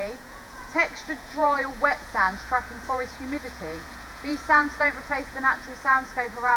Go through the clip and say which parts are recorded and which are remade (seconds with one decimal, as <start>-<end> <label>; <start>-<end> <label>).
0.0-6.6 remade